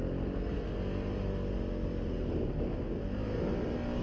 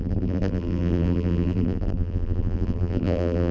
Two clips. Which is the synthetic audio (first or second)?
second